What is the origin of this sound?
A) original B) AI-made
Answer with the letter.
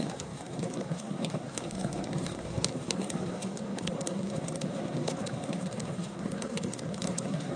B